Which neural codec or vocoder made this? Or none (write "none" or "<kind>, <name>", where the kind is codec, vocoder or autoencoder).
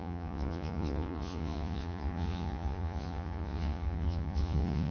vocoder, Vocos